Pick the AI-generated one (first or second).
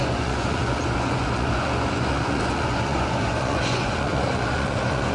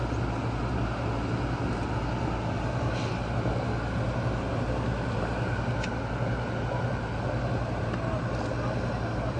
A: first